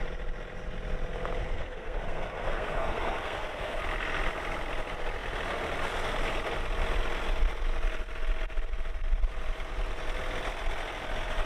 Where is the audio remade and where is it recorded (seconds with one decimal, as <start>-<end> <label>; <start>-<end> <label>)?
0.0-1.4 recorded; 1.4-3.8 remade; 3.8-11.5 recorded